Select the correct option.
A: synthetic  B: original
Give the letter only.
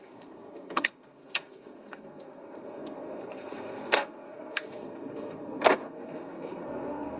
A